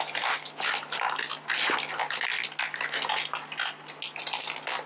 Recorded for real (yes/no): yes